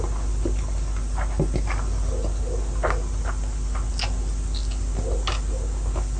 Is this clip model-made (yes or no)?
no